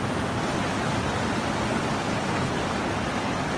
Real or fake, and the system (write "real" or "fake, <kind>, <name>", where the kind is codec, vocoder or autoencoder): real